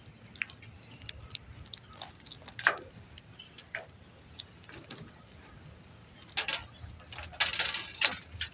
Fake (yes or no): no